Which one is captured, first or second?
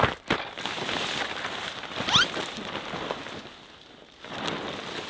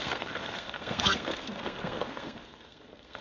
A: first